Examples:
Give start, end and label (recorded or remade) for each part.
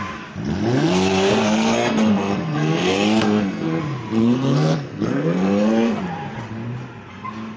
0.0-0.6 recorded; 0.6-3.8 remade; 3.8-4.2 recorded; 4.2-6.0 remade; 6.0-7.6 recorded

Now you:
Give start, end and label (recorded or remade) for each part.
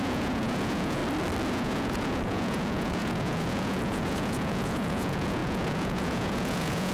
0.0-1.0 remade; 1.0-1.5 recorded; 1.5-6.9 remade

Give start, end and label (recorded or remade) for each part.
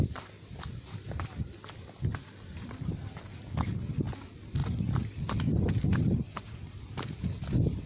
0.0-4.6 recorded; 4.6-5.7 remade; 5.7-7.9 recorded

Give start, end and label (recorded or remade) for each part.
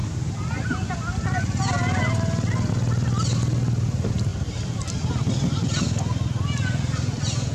0.0-7.5 recorded